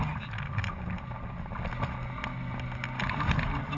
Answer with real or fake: real